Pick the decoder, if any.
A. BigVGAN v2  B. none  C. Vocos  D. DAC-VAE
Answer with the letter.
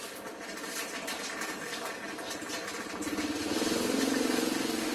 B